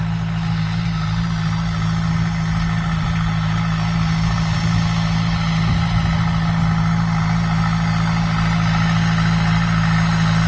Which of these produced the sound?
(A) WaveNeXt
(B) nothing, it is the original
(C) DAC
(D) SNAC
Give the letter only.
B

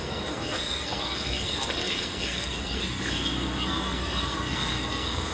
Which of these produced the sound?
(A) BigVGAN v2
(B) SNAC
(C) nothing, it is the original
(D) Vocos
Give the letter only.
B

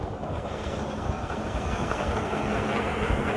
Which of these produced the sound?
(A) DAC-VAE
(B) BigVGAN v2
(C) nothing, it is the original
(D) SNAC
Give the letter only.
D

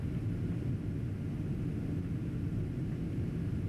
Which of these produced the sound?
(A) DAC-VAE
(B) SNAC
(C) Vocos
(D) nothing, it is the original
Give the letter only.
D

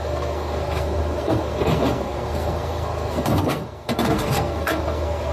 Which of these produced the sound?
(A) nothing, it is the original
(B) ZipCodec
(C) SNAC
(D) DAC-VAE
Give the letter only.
C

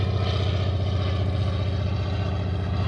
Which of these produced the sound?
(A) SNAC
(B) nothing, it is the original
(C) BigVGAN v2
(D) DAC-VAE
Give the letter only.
B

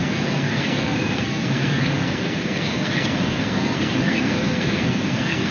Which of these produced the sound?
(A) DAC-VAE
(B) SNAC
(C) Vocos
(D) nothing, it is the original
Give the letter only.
B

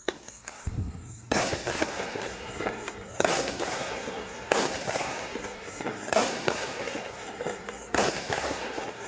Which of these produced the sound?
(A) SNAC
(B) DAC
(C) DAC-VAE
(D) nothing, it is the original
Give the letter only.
A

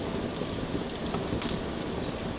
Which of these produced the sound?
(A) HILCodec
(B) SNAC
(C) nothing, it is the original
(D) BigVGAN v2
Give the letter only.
C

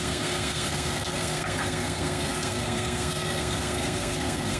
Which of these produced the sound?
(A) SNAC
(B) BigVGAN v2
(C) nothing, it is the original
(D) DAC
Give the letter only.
A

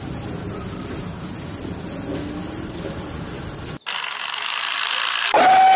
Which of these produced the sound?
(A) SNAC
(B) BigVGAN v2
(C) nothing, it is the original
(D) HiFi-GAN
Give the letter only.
C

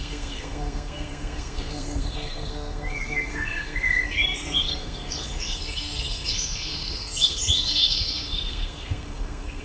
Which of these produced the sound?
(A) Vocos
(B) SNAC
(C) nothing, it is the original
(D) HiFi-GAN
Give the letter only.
B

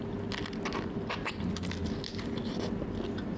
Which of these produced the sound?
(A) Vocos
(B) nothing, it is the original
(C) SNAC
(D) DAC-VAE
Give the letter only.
B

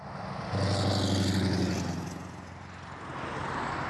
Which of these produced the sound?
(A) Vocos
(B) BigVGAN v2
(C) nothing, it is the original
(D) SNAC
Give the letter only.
C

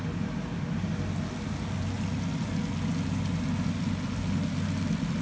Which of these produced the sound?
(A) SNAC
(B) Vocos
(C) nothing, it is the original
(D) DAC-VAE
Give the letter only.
C